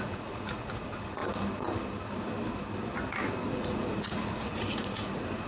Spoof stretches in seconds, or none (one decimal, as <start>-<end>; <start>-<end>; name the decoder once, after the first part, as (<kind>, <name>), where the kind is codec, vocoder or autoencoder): 0.0-1.2 (vocoder, Vocos); 3.5-5.5